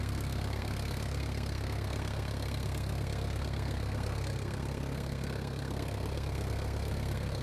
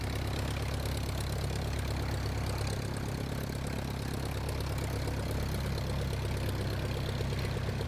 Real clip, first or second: second